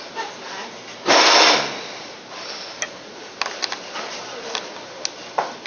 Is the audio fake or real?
real